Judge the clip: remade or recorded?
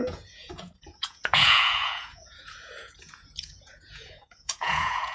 remade